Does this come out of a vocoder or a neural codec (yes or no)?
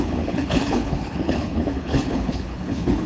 yes